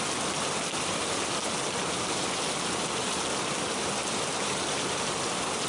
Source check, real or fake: fake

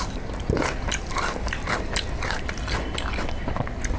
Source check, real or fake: real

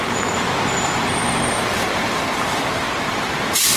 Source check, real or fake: fake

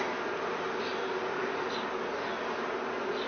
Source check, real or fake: real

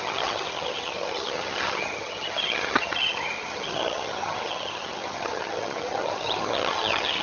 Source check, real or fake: fake